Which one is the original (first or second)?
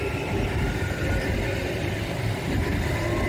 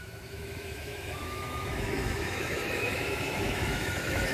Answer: first